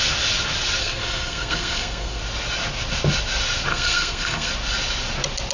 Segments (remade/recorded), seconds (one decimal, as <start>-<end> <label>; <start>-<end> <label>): 0.0-0.8 recorded; 0.8-2.2 remade; 2.2-3.7 recorded; 3.7-4.5 remade; 4.5-5.5 recorded